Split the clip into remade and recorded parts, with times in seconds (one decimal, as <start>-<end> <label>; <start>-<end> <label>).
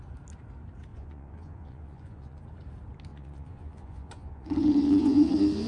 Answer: 0.0-0.9 recorded; 0.9-2.4 remade; 2.4-3.1 recorded; 3.1-5.3 remade; 5.3-5.7 recorded